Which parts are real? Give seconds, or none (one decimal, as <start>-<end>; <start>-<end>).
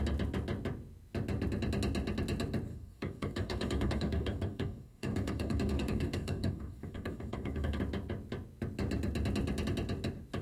0.0-2.7; 7.8-10.4